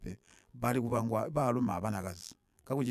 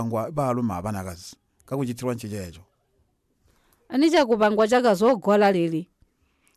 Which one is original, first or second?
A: second